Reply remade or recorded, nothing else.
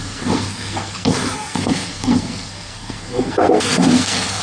remade